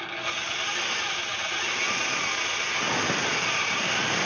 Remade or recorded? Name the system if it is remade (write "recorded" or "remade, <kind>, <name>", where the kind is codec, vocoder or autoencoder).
recorded